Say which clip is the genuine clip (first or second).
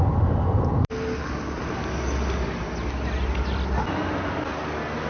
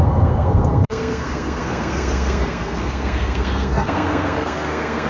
first